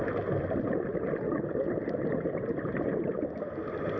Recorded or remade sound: recorded